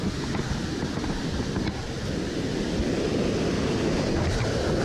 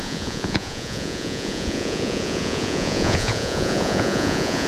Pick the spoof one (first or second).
second